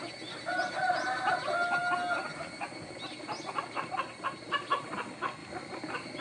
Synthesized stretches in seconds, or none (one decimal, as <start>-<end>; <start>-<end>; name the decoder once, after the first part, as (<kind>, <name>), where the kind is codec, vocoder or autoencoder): 5.4-6.2 (vocoder, BigVGAN v2)